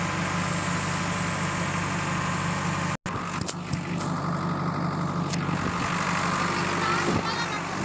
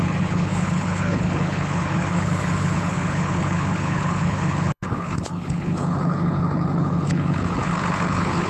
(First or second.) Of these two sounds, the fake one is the second